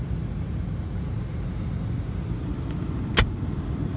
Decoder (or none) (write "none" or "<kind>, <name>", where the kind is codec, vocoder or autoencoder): none